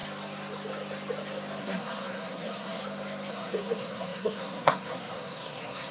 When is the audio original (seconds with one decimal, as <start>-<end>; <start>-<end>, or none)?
0.0-1.6; 2.8-3.3